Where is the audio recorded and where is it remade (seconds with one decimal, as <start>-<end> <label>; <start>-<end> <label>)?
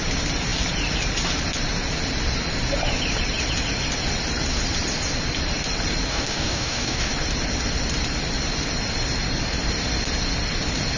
0.0-6.1 recorded; 6.1-7.1 remade; 7.1-11.0 recorded